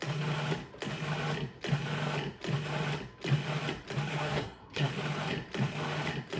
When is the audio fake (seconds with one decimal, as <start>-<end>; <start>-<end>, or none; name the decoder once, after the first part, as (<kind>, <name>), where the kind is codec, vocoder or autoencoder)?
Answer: 4.1-4.9 (codec, SNAC)